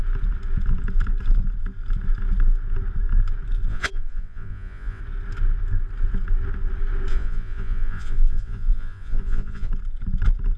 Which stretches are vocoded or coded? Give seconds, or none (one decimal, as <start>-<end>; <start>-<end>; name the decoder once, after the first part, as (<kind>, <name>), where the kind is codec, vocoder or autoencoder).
3.7-5.0 (vocoder, Vocos); 7.1-9.7